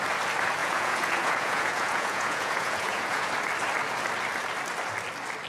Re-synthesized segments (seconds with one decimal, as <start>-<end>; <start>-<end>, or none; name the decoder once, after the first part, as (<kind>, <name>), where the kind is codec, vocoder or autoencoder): 0.6-3.3 (vocoder, Vocos)